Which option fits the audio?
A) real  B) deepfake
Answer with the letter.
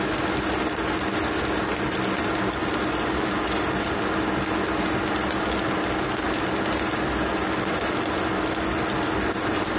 A